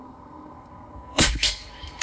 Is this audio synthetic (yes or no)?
yes